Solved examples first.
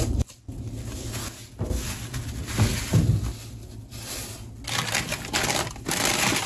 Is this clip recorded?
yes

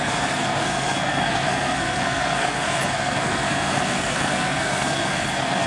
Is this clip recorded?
no